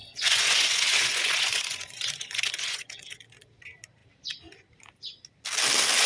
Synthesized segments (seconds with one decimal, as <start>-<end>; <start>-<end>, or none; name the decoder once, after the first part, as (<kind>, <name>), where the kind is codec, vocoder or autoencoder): 0.0-3.2 (vocoder, Vocos)